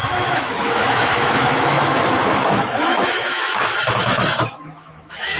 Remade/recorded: remade